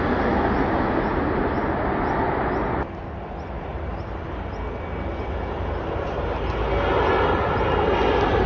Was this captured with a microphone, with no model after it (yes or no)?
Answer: yes